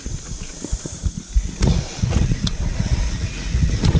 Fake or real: fake